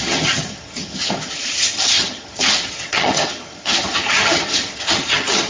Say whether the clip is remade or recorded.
remade